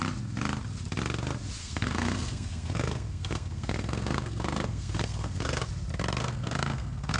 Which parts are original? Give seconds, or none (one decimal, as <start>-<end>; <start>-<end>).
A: 0.0-1.6; 5.6-6.2

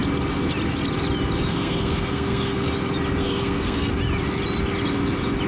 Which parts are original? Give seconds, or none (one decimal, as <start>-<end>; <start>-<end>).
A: 0.0-1.5; 2.7-3.2; 3.9-5.5

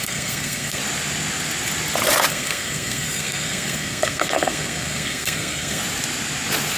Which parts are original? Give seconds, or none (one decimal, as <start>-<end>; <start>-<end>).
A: 0.8-2.3; 5.8-6.8

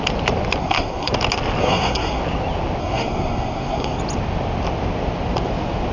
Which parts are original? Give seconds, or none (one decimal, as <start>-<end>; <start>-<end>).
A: 0.0-0.6; 1.1-1.6; 2.2-2.8; 4.0-5.9

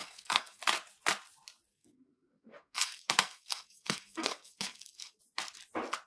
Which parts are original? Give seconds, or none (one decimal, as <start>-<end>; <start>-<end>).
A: 0.6-1.7; 5.2-6.1

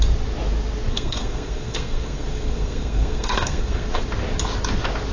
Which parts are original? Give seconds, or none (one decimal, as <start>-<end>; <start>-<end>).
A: 0.0-0.9; 4.0-5.1

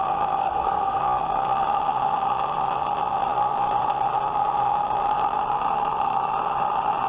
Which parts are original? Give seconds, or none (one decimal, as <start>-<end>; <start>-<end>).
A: 0.0-0.4; 1.0-7.1